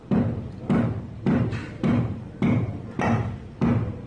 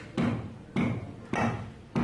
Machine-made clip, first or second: first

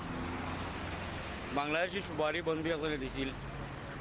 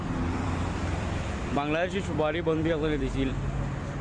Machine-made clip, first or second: second